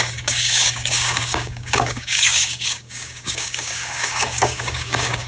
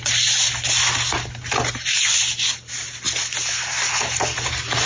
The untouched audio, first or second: second